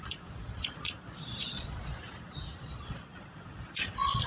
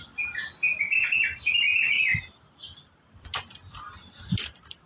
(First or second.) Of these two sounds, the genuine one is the second